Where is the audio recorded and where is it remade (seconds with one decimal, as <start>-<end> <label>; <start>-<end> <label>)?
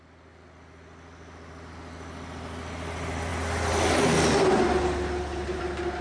0.0-6.0 recorded